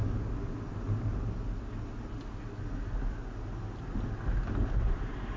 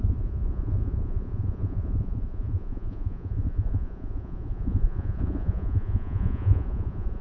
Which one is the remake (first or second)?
second